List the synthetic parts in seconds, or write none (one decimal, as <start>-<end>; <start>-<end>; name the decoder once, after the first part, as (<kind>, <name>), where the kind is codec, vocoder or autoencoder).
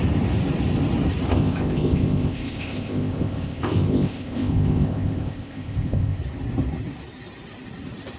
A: 1.3-6.2 (codec, ZipCodec)